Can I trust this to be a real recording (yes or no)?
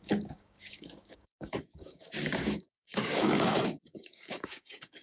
no